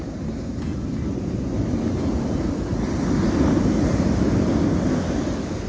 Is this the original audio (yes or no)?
yes